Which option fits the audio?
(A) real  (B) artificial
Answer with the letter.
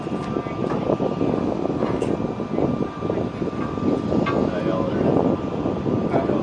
A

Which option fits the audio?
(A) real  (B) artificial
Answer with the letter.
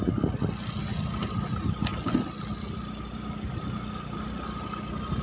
A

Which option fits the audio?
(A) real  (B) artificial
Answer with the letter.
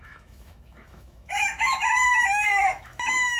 B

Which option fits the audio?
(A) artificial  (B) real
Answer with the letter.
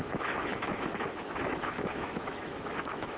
A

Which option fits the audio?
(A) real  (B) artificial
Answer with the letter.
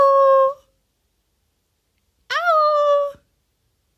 A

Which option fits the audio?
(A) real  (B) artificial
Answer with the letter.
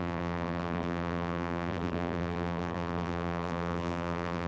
B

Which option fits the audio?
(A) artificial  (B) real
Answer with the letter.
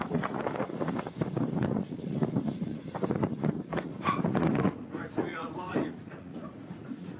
A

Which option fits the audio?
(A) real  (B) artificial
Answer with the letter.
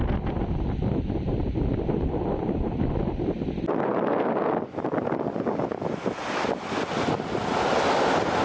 A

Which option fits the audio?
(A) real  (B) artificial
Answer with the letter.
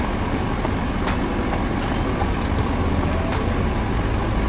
A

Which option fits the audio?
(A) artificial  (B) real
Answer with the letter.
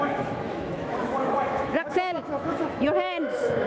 A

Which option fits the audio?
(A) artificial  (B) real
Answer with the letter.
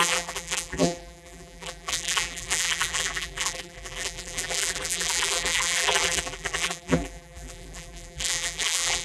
A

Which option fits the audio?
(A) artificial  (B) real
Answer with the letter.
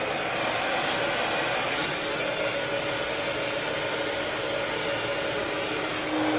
B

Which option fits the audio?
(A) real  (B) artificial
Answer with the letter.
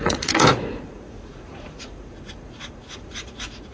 B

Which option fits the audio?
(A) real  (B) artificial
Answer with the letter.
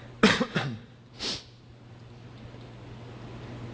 A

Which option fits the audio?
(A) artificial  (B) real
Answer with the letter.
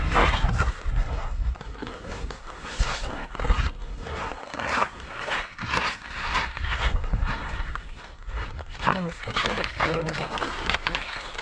A